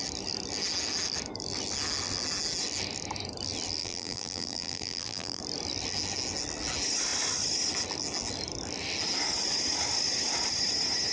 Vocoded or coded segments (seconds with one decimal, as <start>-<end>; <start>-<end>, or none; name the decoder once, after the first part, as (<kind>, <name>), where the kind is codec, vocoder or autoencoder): 3.8-5.4 (vocoder, BigVGAN v2)